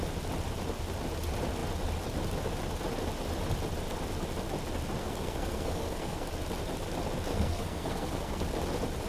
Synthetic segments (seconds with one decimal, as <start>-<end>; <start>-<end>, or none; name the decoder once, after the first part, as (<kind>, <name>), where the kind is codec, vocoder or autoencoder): 5.0-6.3 (codec, SNAC); 7.3-8.4